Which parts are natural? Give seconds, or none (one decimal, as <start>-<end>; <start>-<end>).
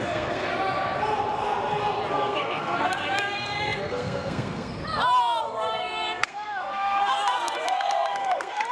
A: 0.5-2.1; 4.8-5.4